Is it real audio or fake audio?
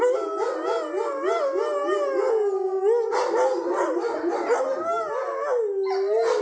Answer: real